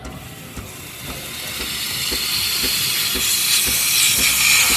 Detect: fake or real real